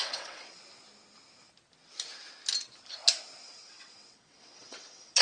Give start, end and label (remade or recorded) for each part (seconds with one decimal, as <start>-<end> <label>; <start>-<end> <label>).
0.0-0.6 remade; 0.6-3.4 recorded; 3.4-5.2 remade